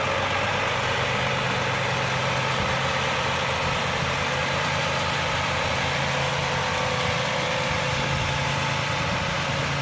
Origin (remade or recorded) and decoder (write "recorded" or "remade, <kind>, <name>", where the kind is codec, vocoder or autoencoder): recorded